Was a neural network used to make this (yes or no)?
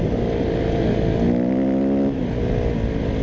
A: no